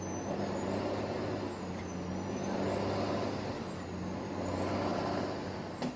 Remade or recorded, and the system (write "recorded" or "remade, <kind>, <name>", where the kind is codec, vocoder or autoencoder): recorded